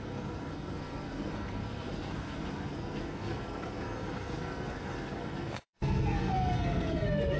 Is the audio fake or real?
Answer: fake